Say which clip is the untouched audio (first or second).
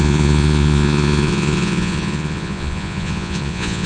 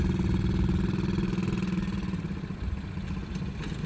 second